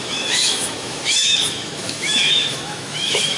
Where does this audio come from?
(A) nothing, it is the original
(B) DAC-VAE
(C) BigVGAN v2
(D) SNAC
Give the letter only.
B